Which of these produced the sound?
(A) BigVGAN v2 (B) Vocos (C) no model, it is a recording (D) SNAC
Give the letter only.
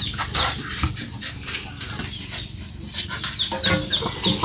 C